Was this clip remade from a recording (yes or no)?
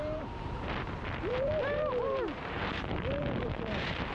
yes